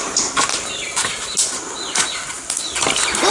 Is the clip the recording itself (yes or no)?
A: yes